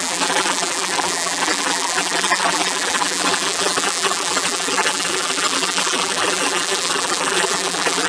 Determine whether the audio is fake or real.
fake